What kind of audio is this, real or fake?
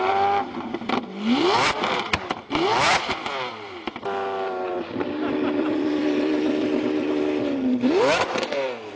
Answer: fake